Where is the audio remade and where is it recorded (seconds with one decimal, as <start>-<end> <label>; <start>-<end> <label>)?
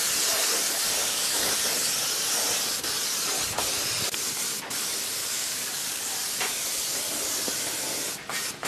0.0-1.0 recorded; 1.0-1.5 remade; 1.5-5.2 recorded; 5.2-6.0 remade; 6.0-8.7 recorded